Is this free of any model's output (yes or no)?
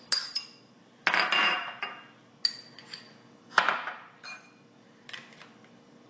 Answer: yes